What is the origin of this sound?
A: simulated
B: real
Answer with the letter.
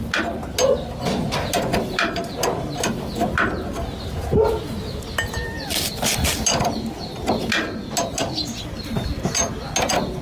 B